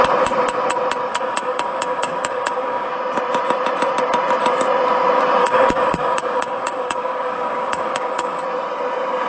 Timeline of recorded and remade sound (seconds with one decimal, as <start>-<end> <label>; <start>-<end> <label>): 0.0-1.1 recorded; 1.1-2.9 remade; 2.9-5.4 recorded; 5.4-8.4 remade; 8.4-9.3 recorded